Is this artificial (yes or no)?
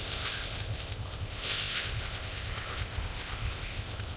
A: yes